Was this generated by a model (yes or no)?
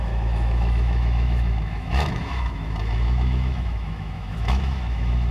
yes